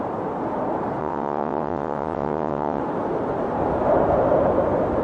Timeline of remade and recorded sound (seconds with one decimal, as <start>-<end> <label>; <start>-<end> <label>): 0.0-1.0 recorded; 1.0-2.8 remade; 2.8-5.0 recorded